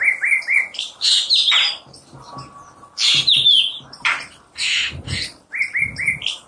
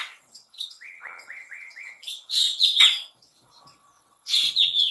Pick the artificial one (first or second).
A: second